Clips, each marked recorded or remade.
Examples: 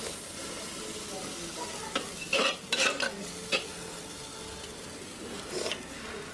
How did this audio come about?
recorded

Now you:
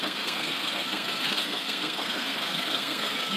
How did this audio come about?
remade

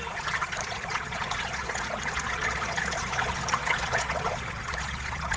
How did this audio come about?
remade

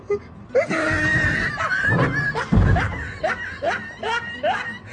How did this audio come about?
recorded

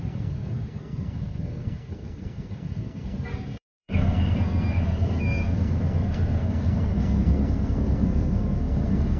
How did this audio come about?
remade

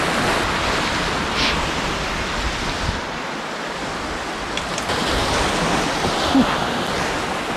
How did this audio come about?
recorded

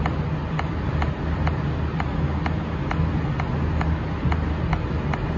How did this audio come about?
recorded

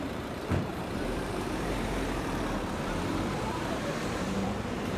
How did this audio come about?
remade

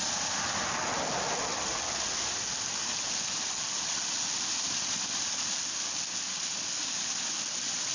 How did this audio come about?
recorded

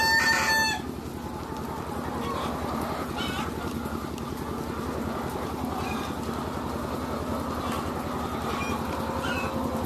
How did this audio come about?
recorded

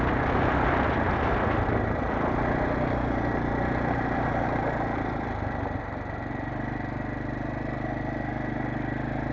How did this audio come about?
recorded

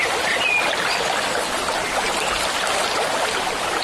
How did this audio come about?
recorded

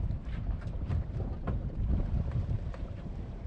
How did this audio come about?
remade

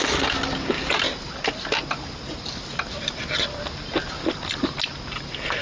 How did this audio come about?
recorded